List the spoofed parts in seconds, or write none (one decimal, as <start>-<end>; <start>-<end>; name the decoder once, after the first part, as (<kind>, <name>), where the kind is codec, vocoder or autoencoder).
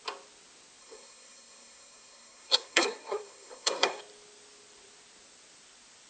0.8-4.0 (codec, SNAC)